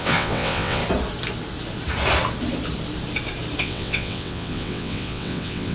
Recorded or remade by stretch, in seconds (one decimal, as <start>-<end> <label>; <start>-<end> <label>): 0.0-0.8 remade; 0.8-3.6 recorded; 3.6-5.7 remade